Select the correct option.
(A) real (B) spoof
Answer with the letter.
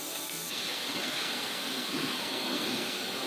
B